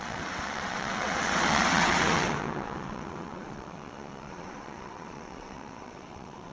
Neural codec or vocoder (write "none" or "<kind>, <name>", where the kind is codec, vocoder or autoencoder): vocoder, WaveNeXt